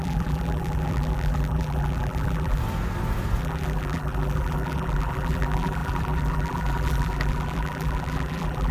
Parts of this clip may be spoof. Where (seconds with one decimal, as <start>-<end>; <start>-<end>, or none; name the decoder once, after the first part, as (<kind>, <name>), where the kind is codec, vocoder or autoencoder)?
0.0-2.6 (vocoder, BigVGAN v2); 3.4-8.7